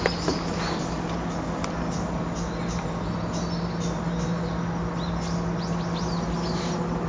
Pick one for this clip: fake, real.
real